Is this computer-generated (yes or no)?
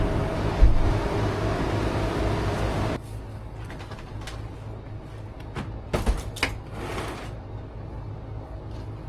no